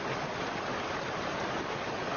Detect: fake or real real